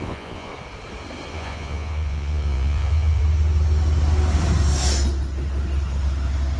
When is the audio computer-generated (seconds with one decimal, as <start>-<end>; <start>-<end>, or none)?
0.0-0.5; 1.3-3.2